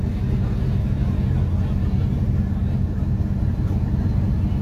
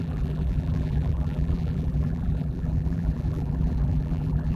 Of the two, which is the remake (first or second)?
second